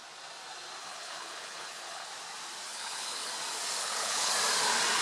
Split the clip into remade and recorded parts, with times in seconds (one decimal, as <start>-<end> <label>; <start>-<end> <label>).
0.0-0.8 recorded; 0.8-2.1 remade; 2.1-2.7 recorded; 2.7-3.3 remade; 3.3-3.8 recorded; 3.8-4.3 remade; 4.3-5.0 recorded

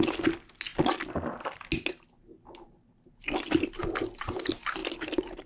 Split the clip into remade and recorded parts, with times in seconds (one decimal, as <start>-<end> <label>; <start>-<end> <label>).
0.0-4.8 recorded; 4.8-5.5 remade